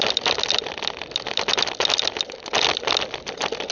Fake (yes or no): no